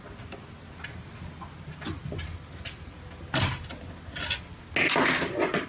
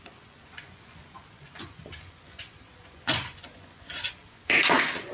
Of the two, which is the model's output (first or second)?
second